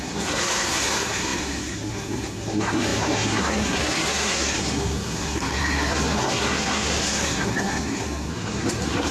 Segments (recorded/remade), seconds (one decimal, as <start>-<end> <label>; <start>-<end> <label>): 0.0-9.1 remade